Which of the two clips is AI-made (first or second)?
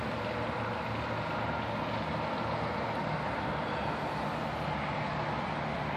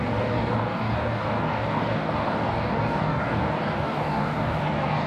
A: second